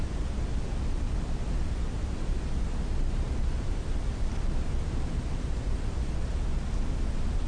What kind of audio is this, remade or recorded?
recorded